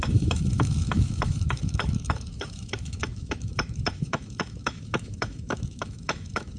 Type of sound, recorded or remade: remade